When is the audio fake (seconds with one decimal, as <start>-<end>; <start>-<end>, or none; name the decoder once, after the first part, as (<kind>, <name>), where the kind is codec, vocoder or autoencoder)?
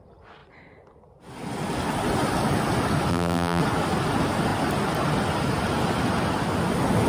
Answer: 3.1-3.6 (vocoder, BigVGAN v2)